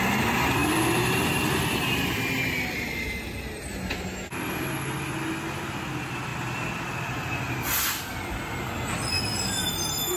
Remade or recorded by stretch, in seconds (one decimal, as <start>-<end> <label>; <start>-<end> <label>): 0.0-10.2 recorded